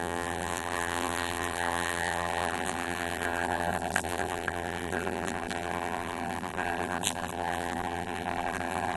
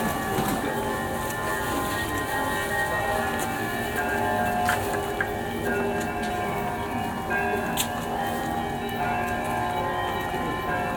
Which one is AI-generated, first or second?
first